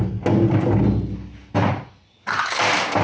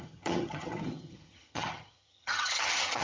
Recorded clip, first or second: first